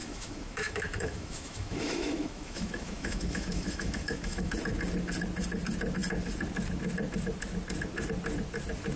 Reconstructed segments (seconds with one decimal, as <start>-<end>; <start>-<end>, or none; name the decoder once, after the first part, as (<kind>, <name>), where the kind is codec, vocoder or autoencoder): 0.0-4.5 (autoencoder, DAC-VAE)